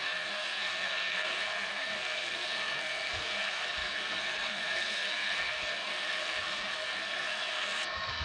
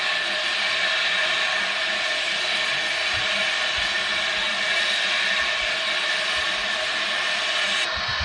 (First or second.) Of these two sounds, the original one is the second